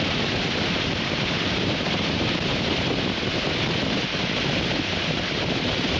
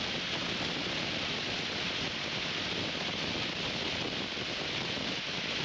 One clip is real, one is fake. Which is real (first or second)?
second